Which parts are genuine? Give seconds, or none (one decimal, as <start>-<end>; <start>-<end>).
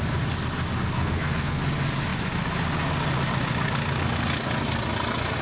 0.0-0.9; 1.6-5.4